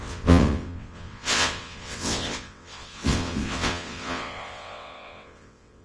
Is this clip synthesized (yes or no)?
yes